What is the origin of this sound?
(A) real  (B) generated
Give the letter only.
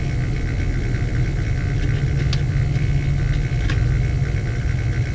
A